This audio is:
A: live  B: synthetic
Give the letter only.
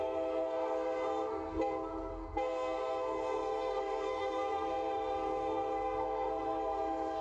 B